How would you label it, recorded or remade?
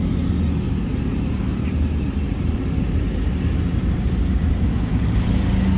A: recorded